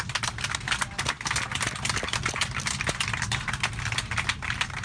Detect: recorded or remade recorded